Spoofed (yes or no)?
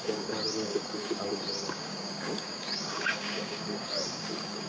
yes